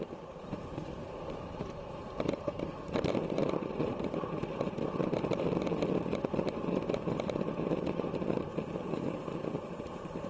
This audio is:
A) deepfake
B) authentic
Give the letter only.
A